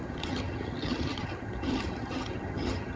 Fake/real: fake